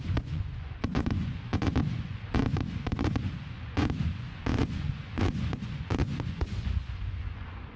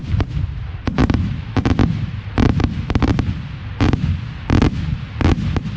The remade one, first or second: first